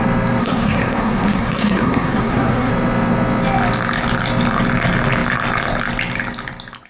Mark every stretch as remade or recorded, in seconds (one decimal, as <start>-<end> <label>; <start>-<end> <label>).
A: 0.0-0.4 recorded; 0.4-2.7 remade; 2.7-6.9 recorded